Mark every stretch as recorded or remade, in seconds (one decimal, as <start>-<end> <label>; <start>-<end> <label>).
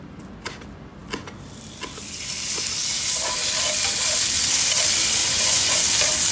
0.0-5.2 recorded; 5.2-5.8 remade; 5.8-6.3 recorded